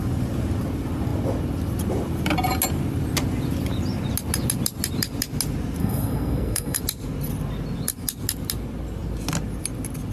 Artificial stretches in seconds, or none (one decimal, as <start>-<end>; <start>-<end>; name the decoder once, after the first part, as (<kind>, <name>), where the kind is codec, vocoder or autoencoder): 5.8-6.8 (codec, SNAC)